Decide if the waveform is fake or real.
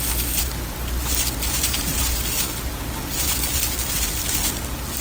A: real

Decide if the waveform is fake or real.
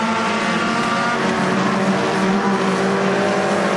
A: fake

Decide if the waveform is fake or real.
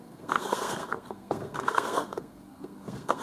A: fake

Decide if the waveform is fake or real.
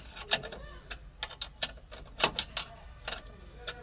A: real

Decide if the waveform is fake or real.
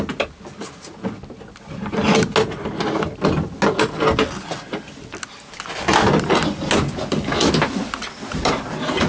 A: real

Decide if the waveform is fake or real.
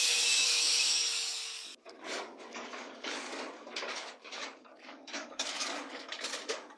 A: fake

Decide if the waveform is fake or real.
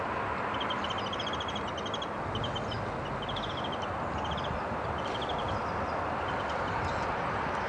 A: real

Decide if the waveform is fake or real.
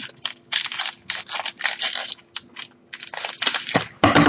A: real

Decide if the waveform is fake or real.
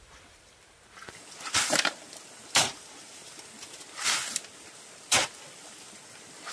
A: real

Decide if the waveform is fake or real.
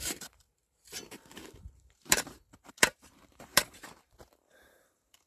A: fake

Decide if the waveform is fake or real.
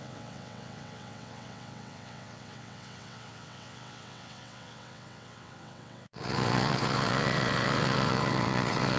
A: fake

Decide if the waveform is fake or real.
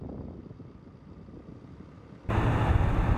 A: real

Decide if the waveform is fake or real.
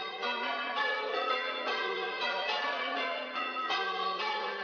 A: fake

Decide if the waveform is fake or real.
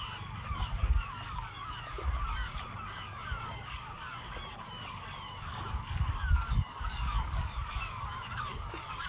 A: fake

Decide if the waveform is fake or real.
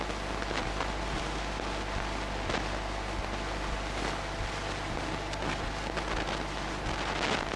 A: real